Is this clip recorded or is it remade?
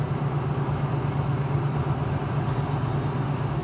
recorded